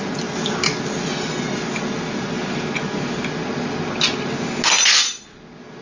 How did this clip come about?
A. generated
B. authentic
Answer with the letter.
B